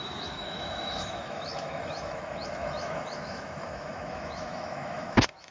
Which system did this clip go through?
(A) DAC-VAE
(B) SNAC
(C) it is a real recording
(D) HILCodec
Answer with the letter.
A